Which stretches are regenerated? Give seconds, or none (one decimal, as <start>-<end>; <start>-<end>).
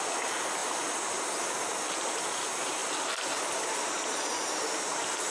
none